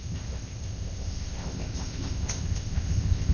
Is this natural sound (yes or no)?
no